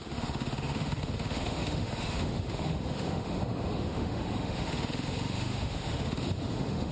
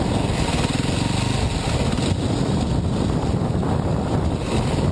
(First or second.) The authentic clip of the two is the second